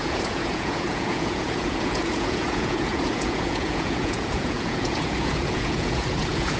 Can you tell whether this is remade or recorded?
remade